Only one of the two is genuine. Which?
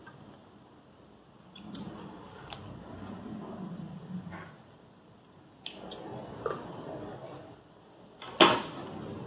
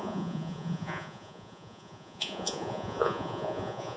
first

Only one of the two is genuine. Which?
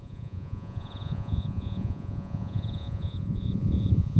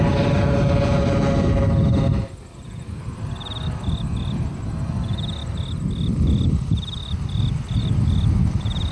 second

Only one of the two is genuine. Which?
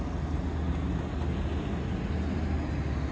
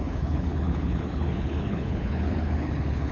first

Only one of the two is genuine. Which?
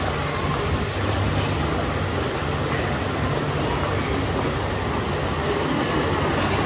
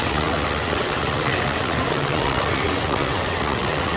first